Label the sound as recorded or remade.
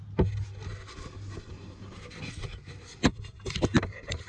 recorded